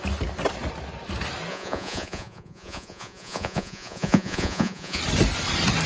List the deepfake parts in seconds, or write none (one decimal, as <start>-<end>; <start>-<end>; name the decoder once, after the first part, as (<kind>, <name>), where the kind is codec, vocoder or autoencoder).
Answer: 1.5-5.0 (vocoder, Vocos)